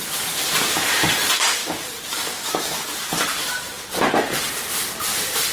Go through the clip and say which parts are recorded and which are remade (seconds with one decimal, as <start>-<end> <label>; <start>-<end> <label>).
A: 0.0-5.5 remade